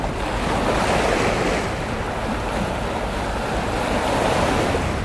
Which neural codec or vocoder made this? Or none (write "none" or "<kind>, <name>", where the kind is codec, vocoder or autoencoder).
none